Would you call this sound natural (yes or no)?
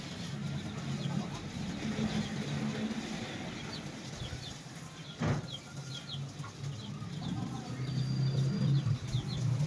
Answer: yes